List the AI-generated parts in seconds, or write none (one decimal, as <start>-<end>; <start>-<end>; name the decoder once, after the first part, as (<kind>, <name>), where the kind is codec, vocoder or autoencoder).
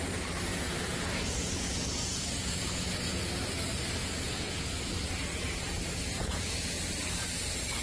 0.5-3.3 (vocoder, Vocos); 4.0-4.6; 6.2-6.8